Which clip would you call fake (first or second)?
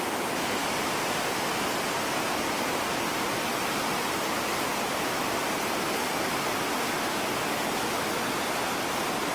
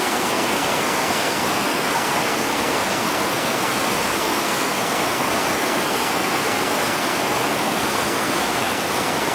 second